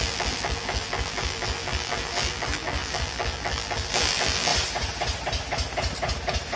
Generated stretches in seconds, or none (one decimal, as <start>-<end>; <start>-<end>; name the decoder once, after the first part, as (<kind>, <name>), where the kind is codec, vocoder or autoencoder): 0.0-4.5 (vocoder, BigVGAN v2)